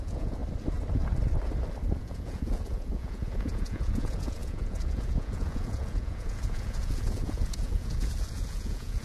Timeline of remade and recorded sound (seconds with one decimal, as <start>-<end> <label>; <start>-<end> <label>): 0.0-0.4 remade; 0.4-1.9 recorded; 1.9-9.0 remade